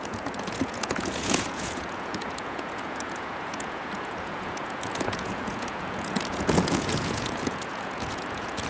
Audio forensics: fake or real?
fake